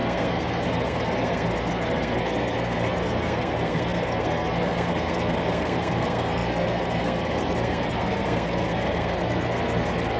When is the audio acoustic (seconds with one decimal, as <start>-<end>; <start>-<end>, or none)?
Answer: none